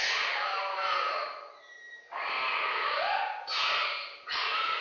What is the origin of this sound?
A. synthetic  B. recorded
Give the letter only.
B